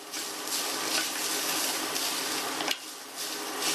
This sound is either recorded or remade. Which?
recorded